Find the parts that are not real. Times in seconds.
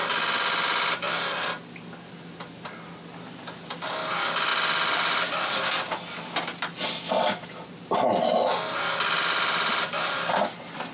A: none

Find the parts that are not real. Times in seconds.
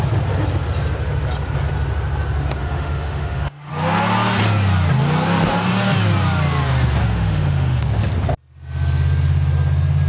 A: 2.6-3.7 (autoencoder, DAC-VAE); 7.0-7.8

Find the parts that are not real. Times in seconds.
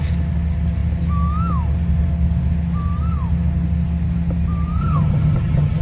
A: 4.8-5.8 (vocoder, HiFi-GAN)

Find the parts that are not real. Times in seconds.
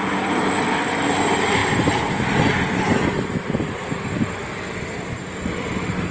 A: none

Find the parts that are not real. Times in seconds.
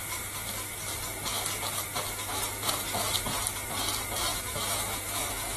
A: 4.3-5.6 (autoencoder, DAC-VAE)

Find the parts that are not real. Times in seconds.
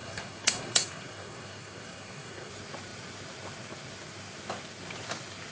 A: 0.0-2.5 (codec, SNAC)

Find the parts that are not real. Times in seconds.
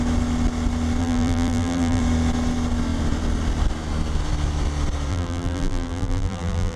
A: 1.0-2.0 (vocoder, BigVGAN v2); 5.1-6.8